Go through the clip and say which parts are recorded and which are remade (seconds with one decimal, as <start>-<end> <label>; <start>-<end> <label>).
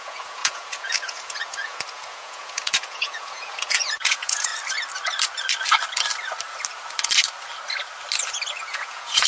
0.0-4.5 remade; 4.5-8.6 recorded; 8.6-9.3 remade